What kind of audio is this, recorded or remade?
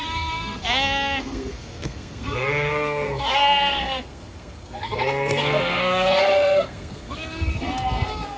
remade